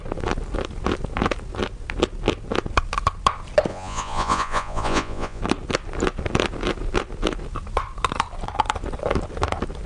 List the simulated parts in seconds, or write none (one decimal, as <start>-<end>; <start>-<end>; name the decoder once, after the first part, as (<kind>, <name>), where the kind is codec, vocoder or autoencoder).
3.7-5.4 (vocoder, Vocos)